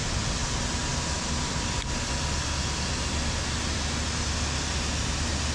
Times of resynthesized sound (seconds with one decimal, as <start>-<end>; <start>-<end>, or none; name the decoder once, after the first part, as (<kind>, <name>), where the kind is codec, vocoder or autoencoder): none